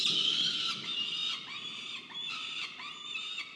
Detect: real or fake real